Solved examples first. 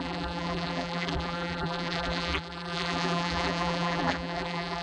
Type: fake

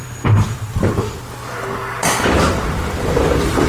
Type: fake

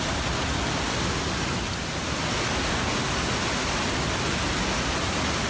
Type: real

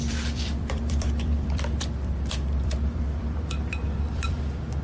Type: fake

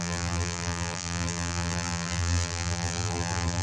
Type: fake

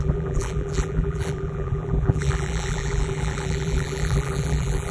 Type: fake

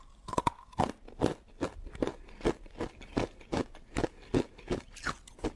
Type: fake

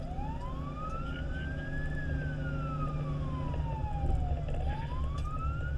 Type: real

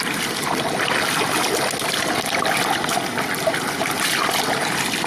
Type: real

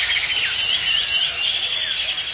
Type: real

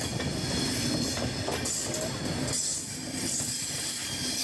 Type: real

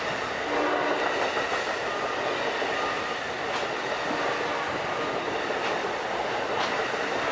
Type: real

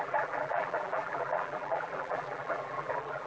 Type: fake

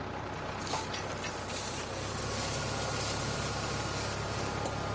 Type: real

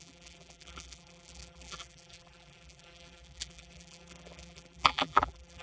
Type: fake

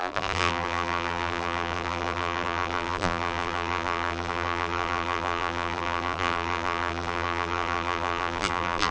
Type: fake